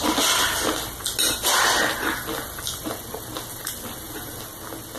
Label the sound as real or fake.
real